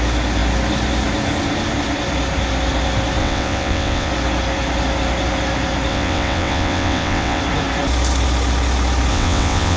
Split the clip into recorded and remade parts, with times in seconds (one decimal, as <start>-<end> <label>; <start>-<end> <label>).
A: 0.0-3.2 recorded; 3.2-4.1 remade; 4.1-5.9 recorded; 5.9-7.4 remade; 7.4-9.1 recorded; 9.1-9.8 remade